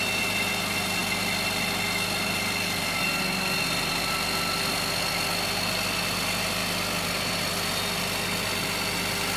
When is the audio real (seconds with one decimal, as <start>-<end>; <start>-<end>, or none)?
0.0-9.4